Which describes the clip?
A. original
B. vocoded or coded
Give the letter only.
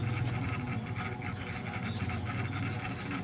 A